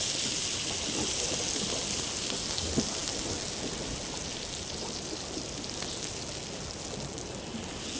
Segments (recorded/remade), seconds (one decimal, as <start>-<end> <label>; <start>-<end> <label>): 0.0-8.0 recorded